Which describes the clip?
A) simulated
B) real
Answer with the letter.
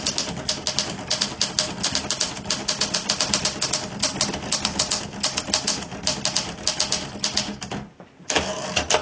B